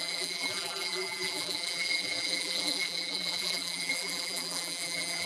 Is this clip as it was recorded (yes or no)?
no